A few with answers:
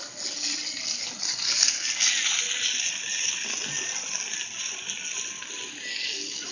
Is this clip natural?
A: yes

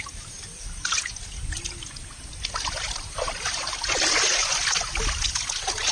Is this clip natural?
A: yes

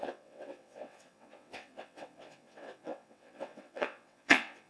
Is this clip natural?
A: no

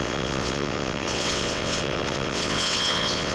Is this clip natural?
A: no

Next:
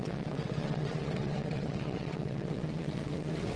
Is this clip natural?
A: no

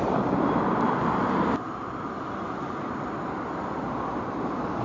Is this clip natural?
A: yes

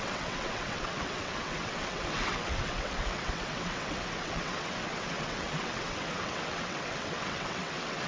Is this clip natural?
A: no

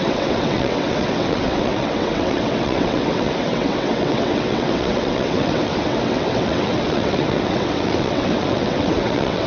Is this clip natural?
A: no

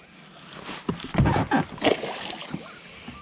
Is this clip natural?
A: yes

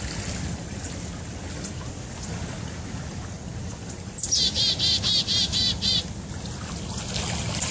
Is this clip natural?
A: yes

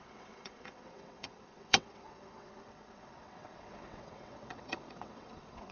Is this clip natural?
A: no